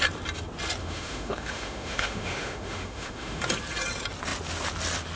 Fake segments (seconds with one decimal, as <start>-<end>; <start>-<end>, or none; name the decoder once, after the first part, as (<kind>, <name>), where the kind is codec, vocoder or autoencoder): 0.8-3.4 (autoencoder, DAC-VAE)